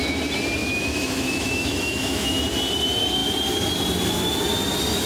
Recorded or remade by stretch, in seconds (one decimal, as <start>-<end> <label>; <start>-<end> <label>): 0.0-0.6 recorded; 0.6-2.4 remade; 2.4-5.1 recorded